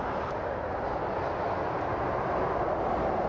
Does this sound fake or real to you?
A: real